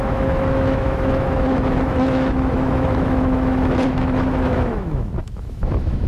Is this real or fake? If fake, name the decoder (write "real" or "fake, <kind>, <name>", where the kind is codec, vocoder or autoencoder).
fake, autoencoder, DAC-VAE